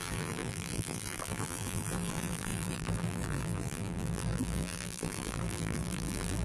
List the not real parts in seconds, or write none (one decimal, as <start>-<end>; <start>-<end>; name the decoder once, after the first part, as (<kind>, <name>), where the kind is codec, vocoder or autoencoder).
0.0-6.4 (vocoder, BigVGAN v2)